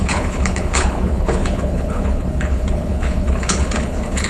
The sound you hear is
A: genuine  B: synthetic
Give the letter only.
B